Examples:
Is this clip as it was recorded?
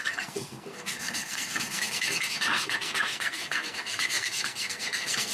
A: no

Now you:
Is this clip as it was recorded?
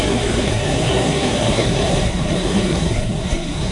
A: no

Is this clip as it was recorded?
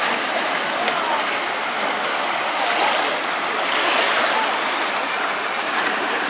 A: no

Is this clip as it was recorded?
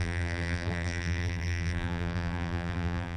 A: no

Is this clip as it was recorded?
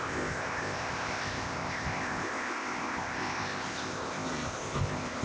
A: no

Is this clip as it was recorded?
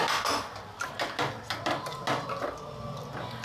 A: yes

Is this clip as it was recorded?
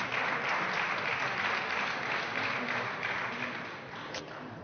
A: yes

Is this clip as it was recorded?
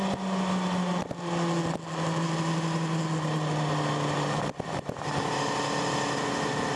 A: yes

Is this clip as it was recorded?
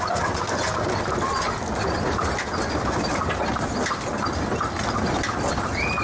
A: yes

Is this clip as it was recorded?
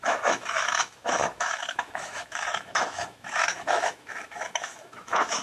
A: no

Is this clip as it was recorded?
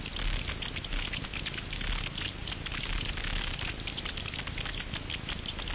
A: yes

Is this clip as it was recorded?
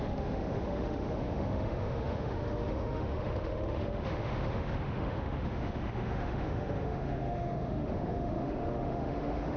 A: no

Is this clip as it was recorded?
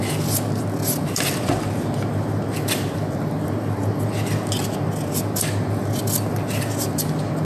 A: yes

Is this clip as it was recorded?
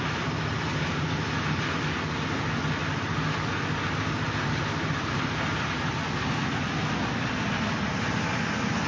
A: yes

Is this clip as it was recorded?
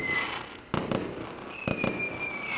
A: yes